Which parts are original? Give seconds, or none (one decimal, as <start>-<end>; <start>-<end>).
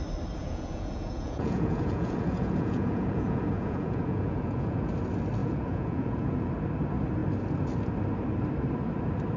0.0-0.4; 4.9-5.4; 6.5-9.4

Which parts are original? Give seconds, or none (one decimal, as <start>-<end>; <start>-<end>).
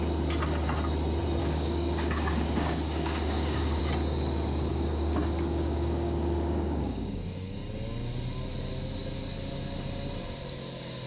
0.0-1.4; 3.8-4.7; 7.6-11.1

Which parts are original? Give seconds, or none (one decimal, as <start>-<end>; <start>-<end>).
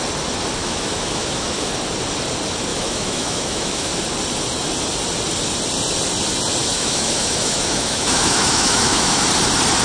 0.0-0.6; 1.7-2.7; 3.9-6.6; 9.3-9.8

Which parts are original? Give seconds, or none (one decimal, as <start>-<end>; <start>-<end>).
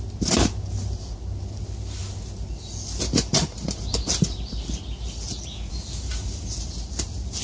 0.0-7.4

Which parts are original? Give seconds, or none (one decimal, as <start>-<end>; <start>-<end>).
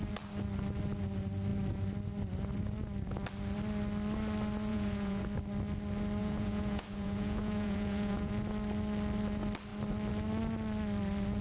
0.0-4.7; 5.2-6.2; 8.3-11.4